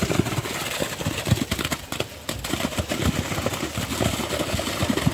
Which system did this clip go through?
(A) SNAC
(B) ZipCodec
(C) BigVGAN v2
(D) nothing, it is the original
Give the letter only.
D